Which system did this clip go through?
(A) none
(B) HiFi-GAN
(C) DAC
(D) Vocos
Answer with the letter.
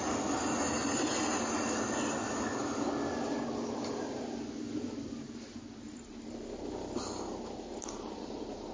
A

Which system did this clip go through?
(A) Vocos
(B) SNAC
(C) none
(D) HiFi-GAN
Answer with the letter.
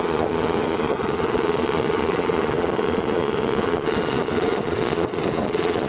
A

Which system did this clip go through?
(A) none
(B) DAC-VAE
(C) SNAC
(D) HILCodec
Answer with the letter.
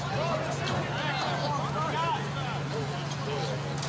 A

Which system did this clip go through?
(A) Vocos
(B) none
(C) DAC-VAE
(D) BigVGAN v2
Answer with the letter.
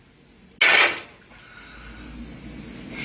B